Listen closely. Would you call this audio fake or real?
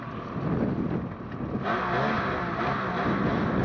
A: real